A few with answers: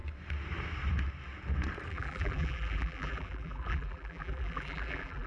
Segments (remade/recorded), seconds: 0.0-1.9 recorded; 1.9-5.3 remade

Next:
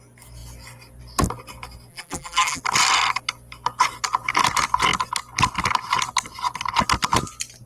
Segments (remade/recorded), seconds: 0.0-1.9 recorded; 1.9-2.6 remade; 2.6-7.7 recorded